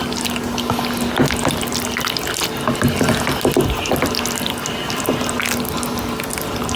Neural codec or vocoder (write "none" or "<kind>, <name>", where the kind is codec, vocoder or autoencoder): none